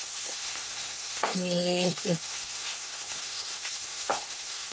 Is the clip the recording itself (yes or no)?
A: no